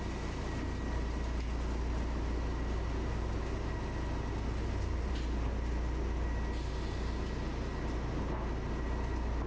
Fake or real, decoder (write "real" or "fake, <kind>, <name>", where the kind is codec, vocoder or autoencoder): real